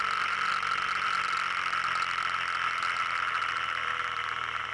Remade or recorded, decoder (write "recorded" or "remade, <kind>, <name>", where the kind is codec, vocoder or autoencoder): remade, vocoder, BigVGAN v2